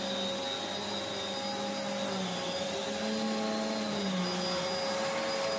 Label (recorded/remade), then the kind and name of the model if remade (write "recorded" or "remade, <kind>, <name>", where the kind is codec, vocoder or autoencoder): recorded